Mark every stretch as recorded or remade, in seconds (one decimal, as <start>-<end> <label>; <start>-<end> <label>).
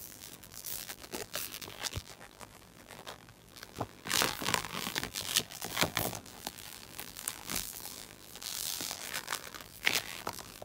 0.0-10.6 remade